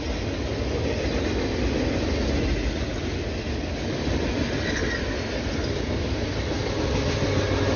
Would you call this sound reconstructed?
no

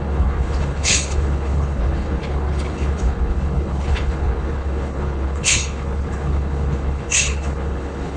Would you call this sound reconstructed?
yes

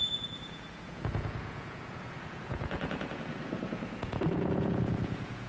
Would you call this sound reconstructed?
yes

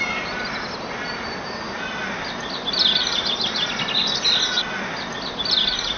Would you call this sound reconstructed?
no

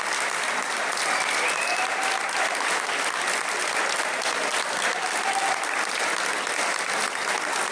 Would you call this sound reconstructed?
no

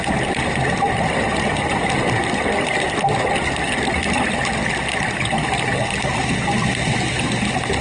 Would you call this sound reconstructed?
no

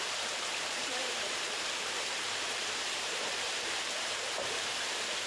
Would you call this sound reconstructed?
yes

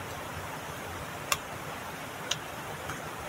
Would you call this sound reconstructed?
no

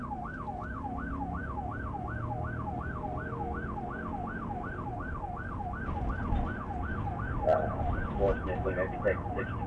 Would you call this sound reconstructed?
no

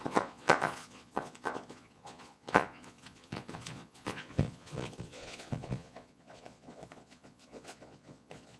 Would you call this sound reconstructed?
yes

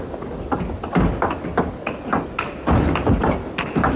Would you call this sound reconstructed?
no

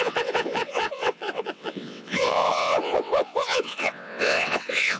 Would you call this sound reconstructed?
yes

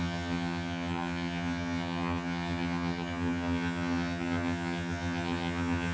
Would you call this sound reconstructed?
yes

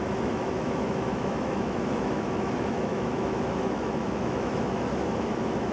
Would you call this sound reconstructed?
yes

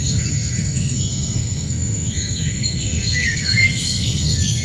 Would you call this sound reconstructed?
yes